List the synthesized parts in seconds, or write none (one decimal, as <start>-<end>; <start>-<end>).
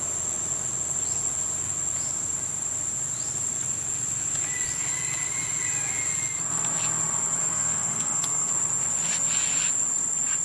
7.4-8.5